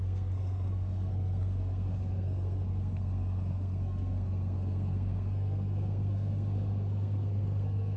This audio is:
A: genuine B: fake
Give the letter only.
B